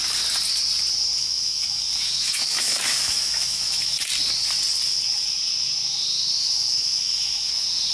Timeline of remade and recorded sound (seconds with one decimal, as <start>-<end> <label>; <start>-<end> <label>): 0.0-1.2 recorded; 1.2-4.0 remade; 4.0-6.4 recorded; 6.4-7.5 remade; 7.5-7.9 recorded

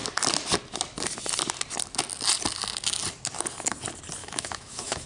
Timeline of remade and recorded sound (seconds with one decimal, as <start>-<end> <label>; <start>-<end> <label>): 0.0-4.2 recorded; 4.2-5.1 remade